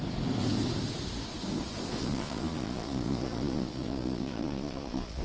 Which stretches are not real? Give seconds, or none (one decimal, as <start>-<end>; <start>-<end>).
2.0-5.2